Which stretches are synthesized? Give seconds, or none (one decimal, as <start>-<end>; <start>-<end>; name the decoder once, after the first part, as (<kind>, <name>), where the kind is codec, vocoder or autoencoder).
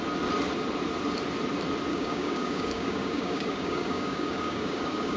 1.9-5.2 (codec, DAC)